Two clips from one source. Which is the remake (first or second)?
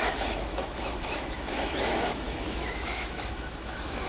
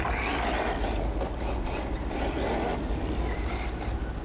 first